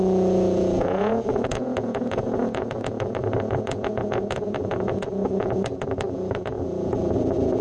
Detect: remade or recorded remade